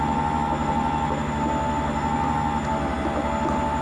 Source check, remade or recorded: recorded